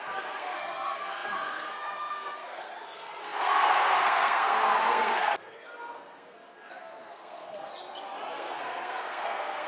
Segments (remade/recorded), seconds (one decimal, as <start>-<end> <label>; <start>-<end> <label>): 0.0-7.7 remade; 7.7-8.3 recorded; 8.3-9.7 remade